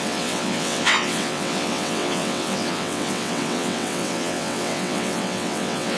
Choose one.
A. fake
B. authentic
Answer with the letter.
A